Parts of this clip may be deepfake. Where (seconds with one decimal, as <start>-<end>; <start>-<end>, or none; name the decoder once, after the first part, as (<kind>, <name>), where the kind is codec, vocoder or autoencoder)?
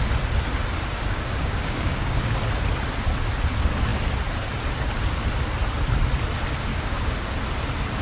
1.0-2.4 (codec, DAC); 6.7-7.3